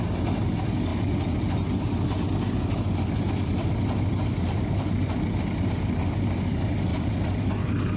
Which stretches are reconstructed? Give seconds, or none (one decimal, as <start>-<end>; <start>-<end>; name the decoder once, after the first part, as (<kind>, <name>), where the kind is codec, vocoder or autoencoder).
none